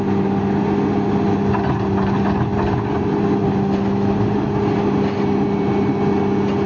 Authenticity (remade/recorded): recorded